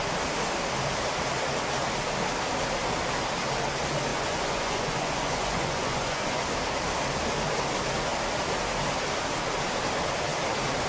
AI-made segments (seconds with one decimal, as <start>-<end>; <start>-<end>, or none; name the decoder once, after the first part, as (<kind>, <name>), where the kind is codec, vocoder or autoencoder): 4.1-6.4 (vocoder, Vocos)